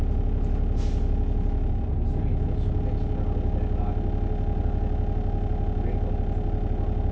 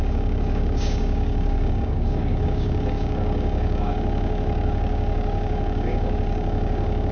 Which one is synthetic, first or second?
second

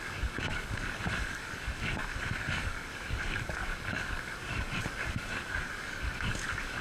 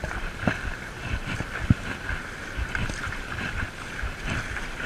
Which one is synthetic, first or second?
first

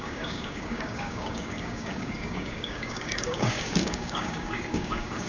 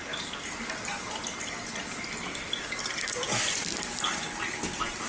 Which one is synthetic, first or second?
first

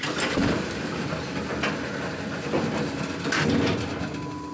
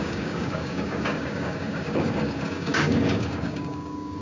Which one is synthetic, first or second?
second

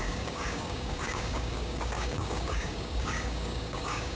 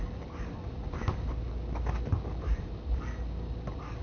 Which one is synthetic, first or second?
first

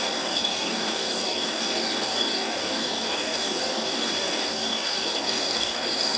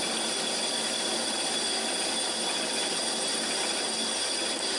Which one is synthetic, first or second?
first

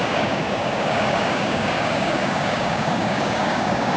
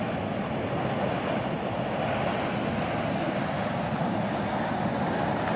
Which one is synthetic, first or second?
first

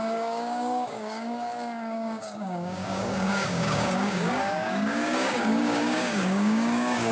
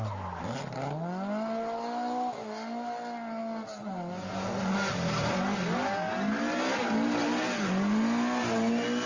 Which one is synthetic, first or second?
first